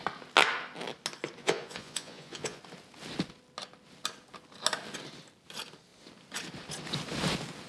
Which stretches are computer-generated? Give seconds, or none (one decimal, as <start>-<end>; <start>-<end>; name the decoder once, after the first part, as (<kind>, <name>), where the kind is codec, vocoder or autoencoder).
1.4-2.6 (vocoder, Vocos)